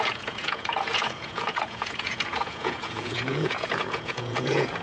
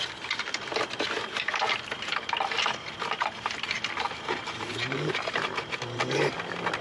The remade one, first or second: first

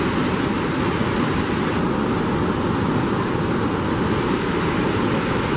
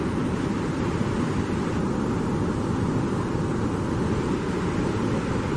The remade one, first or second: second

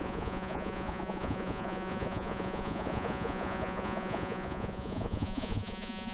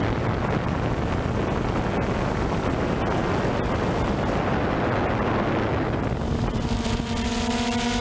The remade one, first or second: first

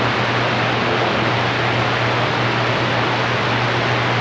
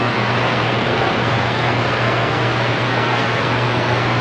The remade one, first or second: second